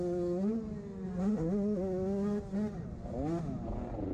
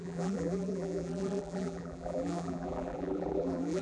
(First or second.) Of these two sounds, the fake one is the second